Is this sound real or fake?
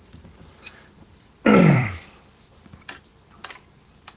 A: fake